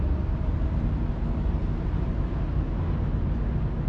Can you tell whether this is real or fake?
real